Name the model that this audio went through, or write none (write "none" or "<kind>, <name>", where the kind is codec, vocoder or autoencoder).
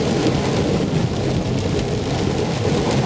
none